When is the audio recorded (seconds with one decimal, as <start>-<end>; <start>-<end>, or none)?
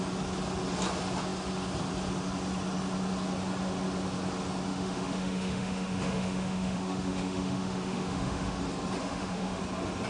0.0-4.7; 8.6-9.0; 9.6-10.1